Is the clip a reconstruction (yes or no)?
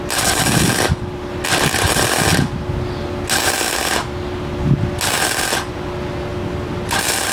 no